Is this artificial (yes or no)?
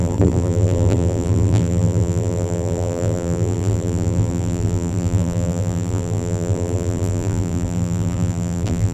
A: yes